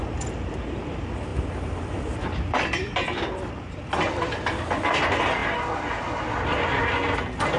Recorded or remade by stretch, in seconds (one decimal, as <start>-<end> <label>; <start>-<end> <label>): 0.0-1.3 remade; 1.3-2.0 recorded; 2.0-5.4 remade; 5.4-7.6 recorded